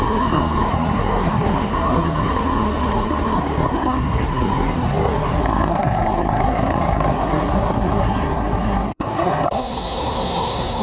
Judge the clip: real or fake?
fake